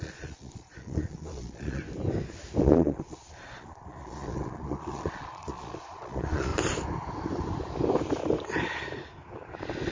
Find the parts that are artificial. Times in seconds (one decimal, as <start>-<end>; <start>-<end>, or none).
0.0-1.8; 2.6-6.5